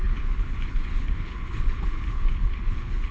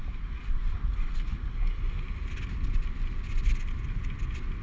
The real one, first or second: second